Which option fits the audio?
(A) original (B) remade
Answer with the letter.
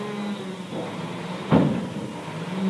B